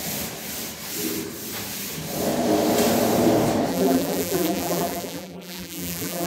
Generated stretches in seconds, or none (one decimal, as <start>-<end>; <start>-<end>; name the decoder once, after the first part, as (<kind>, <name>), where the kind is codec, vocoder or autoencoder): 3.7-6.3 (vocoder, BigVGAN v2)

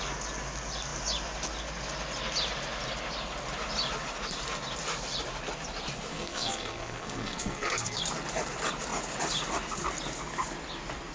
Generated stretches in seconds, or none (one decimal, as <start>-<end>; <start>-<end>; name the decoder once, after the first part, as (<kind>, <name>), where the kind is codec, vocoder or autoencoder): 6.1-8.0 (codec, SNAC)

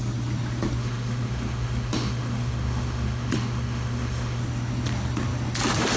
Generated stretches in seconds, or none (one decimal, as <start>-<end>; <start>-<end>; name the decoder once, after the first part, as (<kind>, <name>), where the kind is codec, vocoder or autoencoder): 0.8-4.4 (autoencoder, DAC-VAE)

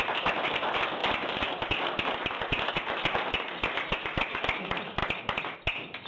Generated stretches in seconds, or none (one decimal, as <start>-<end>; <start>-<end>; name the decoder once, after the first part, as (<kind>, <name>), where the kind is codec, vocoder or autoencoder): none

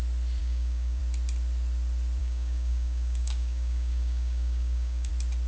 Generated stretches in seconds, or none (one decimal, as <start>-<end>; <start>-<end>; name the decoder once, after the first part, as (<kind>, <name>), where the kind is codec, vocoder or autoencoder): 0.4-1.0 (codec, DAC); 2.2-5.1

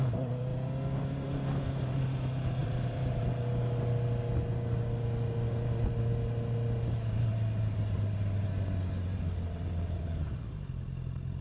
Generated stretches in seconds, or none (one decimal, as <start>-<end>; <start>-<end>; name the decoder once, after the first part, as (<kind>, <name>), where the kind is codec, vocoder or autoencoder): 2.6-3.3 (vocoder, BigVGAN v2)

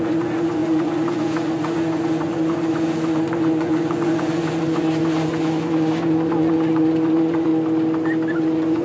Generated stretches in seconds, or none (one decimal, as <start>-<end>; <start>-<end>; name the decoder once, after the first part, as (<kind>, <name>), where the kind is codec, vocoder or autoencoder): 0.0-7.5 (vocoder, Vocos); 8.3-8.8

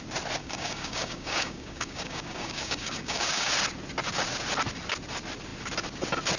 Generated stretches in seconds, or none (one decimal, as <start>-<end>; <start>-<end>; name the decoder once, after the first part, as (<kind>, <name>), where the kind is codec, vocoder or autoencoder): 0.4-3.5 (codec, DAC)